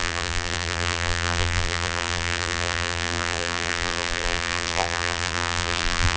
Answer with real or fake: fake